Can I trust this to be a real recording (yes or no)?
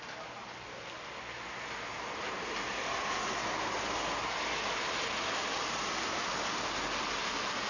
yes